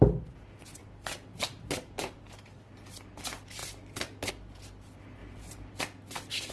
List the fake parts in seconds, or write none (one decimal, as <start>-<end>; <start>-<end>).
0.8-2.2; 5.2-5.8